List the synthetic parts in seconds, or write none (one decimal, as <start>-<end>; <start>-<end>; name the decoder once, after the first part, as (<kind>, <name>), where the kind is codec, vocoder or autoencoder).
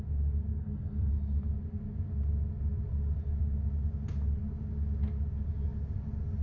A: 0.5-1.1 (codec, SNAC)